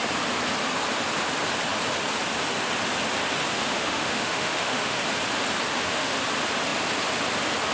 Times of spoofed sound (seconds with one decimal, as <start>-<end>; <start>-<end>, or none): 3.5-5.0; 5.7-6.2